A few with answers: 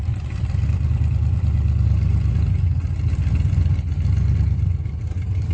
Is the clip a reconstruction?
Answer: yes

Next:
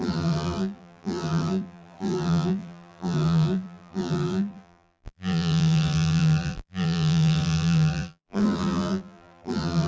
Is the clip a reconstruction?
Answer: yes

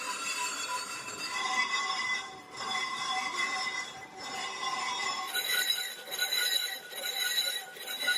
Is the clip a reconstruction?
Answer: yes